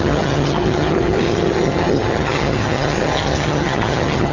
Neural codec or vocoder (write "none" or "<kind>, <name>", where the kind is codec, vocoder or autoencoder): vocoder, HiFi-GAN